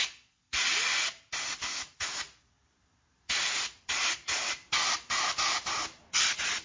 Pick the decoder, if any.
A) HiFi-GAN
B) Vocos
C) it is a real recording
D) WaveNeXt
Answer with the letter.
C